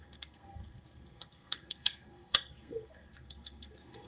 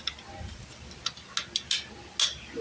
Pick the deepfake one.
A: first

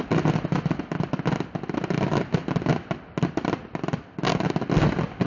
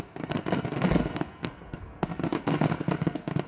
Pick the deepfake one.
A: second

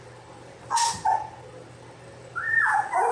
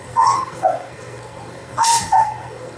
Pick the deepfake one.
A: second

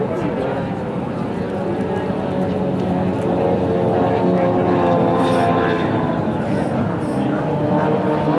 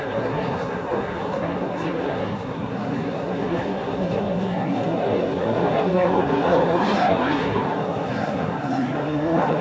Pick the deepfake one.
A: second